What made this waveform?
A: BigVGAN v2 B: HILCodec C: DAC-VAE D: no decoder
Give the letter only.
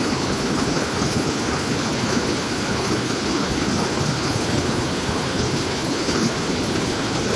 B